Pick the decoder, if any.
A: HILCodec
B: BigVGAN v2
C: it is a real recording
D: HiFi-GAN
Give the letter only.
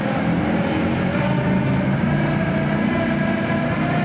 C